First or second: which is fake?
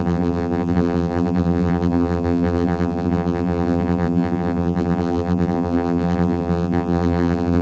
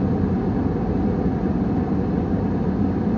first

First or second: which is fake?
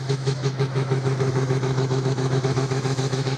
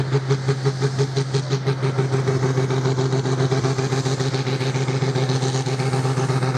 first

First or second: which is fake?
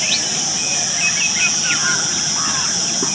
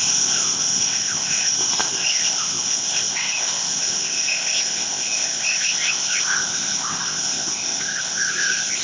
second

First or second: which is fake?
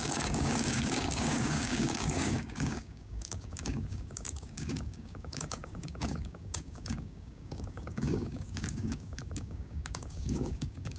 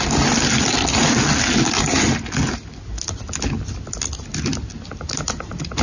first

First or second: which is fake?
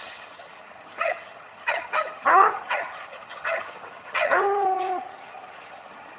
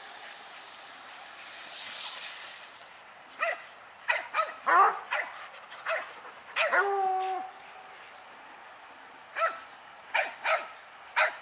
first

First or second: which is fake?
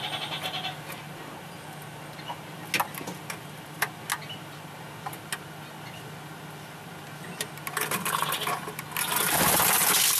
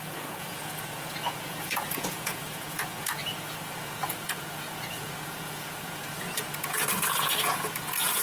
second